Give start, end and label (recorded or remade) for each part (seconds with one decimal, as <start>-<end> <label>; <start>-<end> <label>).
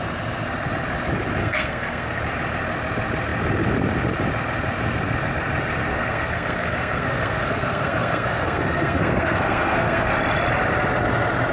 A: 0.0-1.4 recorded; 1.4-2.2 remade; 2.2-5.9 recorded; 5.9-10.1 remade; 10.1-11.5 recorded